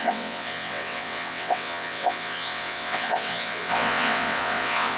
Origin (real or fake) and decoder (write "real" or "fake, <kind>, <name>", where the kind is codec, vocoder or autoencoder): fake, vocoder, WaveNeXt